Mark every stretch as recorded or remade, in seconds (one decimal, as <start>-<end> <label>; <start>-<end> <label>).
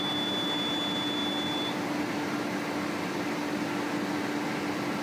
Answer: 0.0-5.0 recorded